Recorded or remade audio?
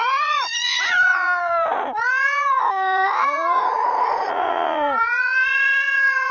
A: remade